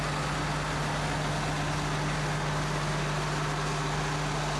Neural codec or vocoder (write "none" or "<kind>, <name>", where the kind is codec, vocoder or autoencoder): none